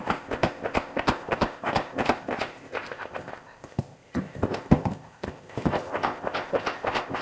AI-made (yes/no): yes